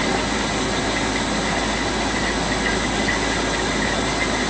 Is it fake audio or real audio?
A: real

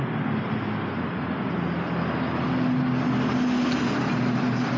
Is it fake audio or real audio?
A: real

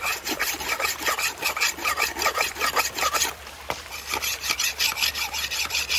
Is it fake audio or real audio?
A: fake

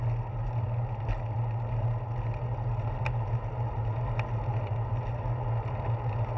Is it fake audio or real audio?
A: real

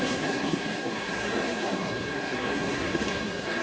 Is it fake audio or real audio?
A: fake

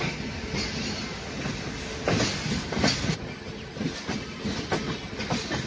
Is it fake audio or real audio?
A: real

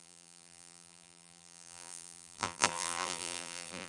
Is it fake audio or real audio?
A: fake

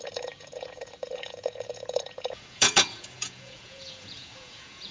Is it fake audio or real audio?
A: fake